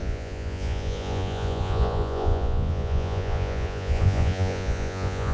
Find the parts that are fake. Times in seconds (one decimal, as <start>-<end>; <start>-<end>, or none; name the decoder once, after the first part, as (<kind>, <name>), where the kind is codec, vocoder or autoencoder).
0.0-5.3 (vocoder, Vocos)